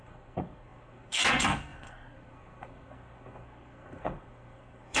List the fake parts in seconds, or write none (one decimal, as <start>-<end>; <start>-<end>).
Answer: 0.0-5.0